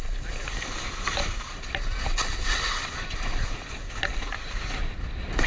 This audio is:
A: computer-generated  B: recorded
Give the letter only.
B